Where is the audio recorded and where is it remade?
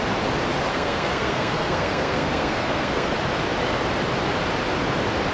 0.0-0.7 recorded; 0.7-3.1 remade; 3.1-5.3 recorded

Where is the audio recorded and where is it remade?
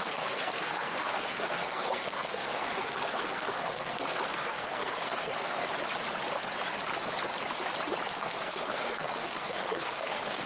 0.0-5.6 remade; 5.6-8.1 recorded; 8.1-10.5 remade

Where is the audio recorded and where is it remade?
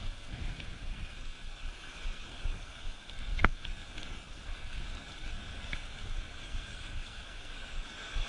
0.0-8.3 remade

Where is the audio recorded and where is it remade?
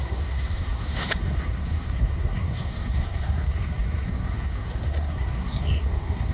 0.0-6.3 remade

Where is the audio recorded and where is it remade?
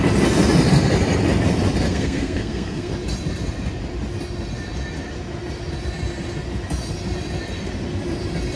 0.0-1.9 recorded; 1.9-2.9 remade; 2.9-8.6 recorded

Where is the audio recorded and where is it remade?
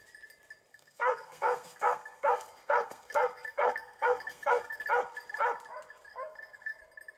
0.0-0.7 recorded; 0.7-4.8 remade; 4.8-6.1 recorded; 6.1-6.8 remade; 6.8-7.2 recorded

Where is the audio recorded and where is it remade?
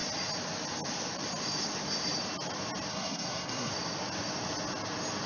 0.0-2.9 recorded; 2.9-3.7 remade; 3.7-5.3 recorded